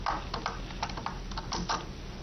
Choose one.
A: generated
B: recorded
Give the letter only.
B